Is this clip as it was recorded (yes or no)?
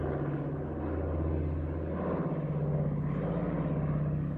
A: yes